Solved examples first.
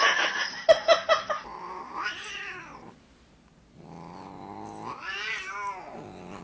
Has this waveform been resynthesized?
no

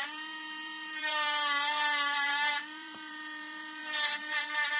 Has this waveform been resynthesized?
yes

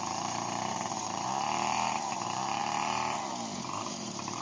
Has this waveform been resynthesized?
yes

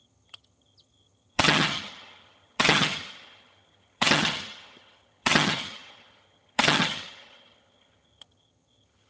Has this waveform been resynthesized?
yes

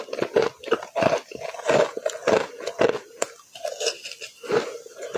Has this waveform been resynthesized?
no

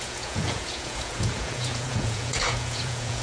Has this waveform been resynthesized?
yes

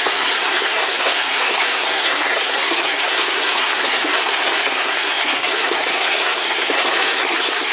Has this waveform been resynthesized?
yes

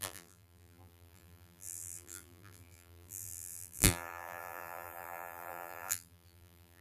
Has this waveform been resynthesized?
yes